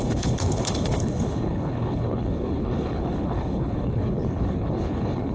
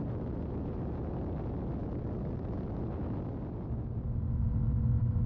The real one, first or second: second